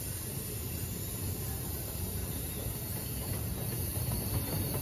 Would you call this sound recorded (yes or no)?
no